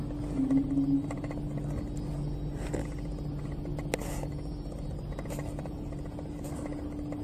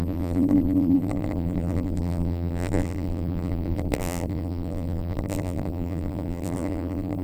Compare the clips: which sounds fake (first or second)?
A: second